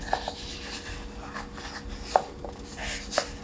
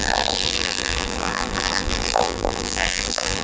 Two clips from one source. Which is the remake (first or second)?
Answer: second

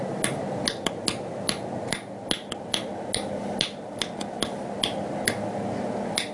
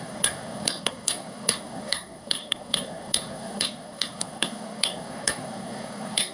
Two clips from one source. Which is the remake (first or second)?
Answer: second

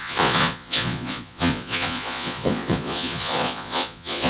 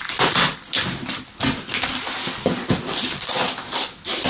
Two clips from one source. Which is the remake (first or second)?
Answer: first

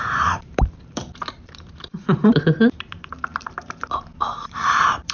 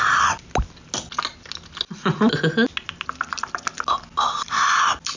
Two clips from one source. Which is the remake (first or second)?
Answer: first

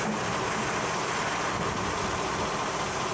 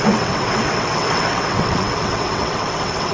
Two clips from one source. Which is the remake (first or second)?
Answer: second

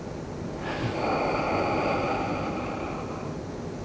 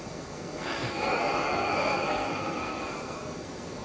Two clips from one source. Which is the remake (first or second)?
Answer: second